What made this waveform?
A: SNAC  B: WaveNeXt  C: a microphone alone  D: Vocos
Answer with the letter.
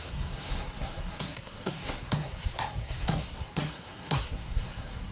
A